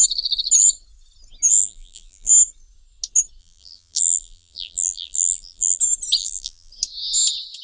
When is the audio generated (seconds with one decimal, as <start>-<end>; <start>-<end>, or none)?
1.6-2.3; 3.4-5.8; 6.2-6.7